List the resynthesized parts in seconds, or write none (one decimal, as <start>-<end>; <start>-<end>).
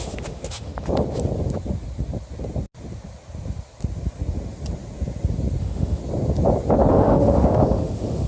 0.0-0.7; 5.6-6.0; 6.9-8.3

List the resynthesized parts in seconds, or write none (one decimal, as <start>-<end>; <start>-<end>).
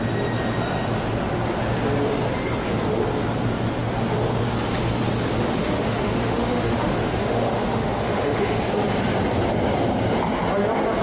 5.6-8.6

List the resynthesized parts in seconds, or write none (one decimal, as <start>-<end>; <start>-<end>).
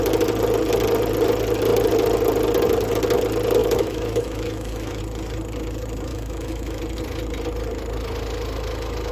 3.6-5.0; 6.1-6.8